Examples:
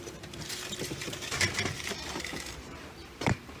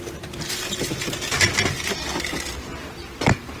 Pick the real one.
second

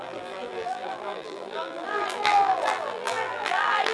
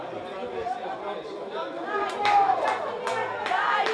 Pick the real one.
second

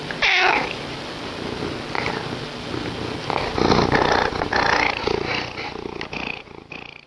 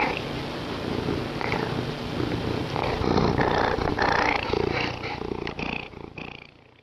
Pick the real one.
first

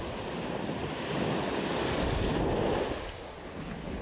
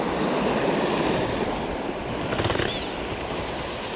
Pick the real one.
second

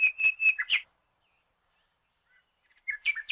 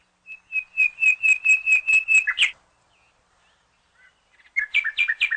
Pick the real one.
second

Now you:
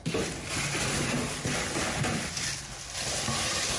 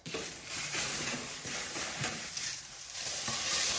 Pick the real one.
first